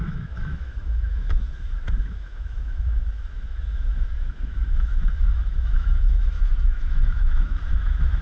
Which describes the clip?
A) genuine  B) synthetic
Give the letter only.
B